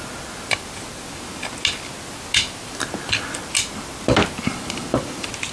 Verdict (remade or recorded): recorded